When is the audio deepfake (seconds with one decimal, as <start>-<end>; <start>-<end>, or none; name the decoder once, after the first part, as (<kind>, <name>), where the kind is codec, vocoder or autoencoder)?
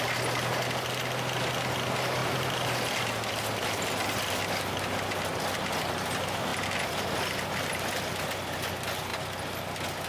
2.2-2.7 (vocoder, BigVGAN v2); 6.5-7.6